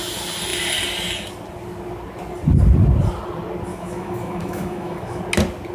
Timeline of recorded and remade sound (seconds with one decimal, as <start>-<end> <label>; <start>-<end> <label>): 0.0-3.7 recorded; 3.7-5.2 remade; 5.2-5.7 recorded